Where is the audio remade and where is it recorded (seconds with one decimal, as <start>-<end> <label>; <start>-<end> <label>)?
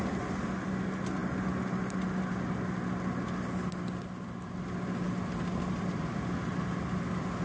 0.0-7.4 recorded